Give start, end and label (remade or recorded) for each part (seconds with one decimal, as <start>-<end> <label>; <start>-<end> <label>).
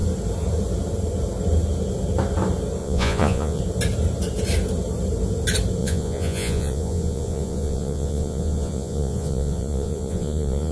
0.0-2.8 recorded; 2.8-3.6 remade; 3.6-5.8 recorded; 5.8-10.7 remade